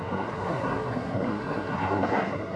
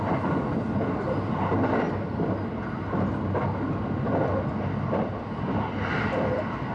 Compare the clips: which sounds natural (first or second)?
second